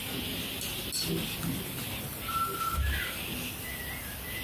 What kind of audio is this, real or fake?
real